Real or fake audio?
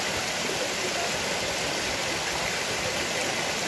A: fake